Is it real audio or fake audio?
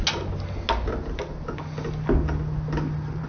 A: real